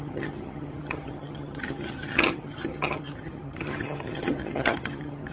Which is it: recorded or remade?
remade